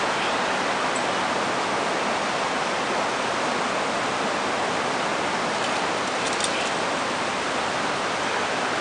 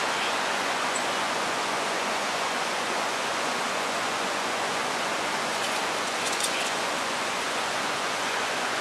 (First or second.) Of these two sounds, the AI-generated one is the second